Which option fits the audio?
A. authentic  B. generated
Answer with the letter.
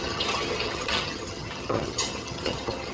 B